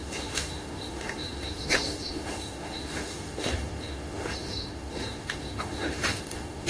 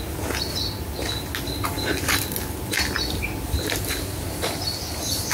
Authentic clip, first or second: second